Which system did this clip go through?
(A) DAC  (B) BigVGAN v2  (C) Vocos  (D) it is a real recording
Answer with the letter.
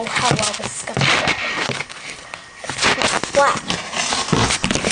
D